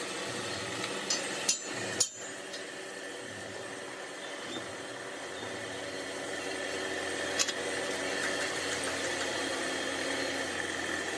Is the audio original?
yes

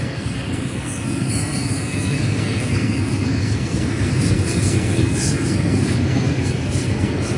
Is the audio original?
no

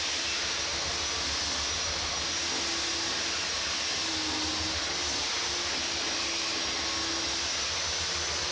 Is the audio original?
yes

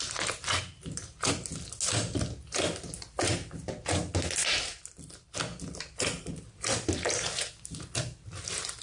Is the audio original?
yes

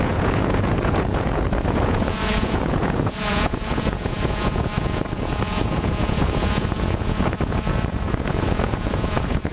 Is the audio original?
no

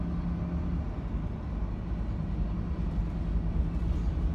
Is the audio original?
yes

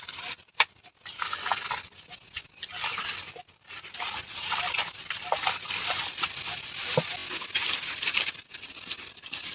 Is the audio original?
yes